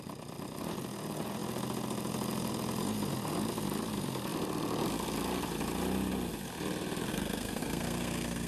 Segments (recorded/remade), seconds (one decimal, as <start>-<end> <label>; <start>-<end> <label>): 0.0-7.1 recorded; 7.1-8.5 remade